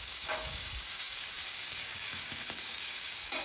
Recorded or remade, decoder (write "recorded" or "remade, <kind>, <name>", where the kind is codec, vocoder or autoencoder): remade, codec, DAC